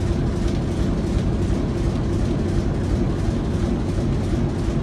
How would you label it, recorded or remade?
recorded